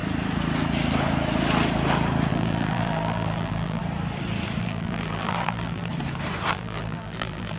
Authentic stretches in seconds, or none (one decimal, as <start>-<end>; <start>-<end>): 0.0-2.3; 3.8-4.6; 5.9-6.5

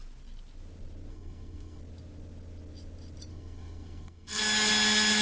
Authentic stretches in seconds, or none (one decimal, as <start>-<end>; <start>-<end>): 0.0-1.1; 1.8-3.3; 4.4-5.2